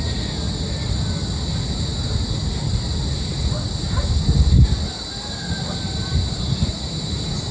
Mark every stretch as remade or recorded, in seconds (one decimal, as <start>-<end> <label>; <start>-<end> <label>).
0.0-7.5 recorded